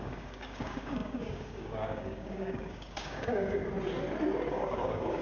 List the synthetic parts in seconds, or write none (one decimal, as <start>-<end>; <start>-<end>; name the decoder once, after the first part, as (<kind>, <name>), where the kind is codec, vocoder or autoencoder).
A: 0.0-3.6 (codec, DAC); 4.5-5.2